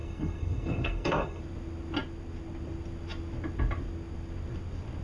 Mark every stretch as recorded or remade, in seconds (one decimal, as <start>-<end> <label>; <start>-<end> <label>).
0.0-1.4 remade; 1.4-5.0 recorded